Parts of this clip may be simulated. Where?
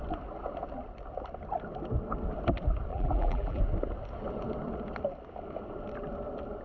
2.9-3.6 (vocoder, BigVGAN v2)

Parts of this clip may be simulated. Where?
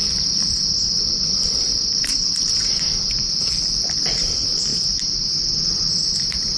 0.0-4.7 (vocoder, BigVGAN v2); 5.8-6.6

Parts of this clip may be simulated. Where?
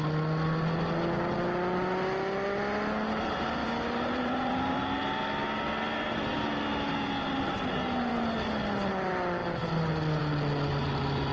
3.6-4.7 (vocoder, BigVGAN v2)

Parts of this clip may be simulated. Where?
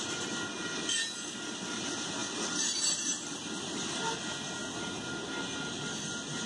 none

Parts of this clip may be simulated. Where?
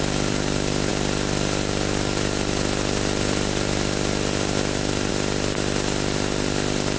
0.0-7.0 (vocoder, BigVGAN v2)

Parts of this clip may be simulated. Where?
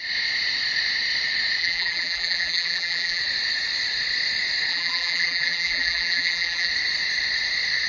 1.6-3.2 (vocoder, BigVGAN v2); 4.7-6.7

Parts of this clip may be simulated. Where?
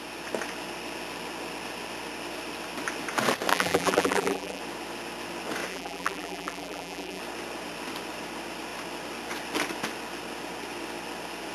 3.5-4.6 (vocoder, BigVGAN v2); 5.7-7.2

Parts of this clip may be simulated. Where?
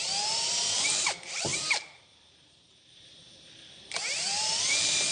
0.0-5.1 (vocoder, BigVGAN v2)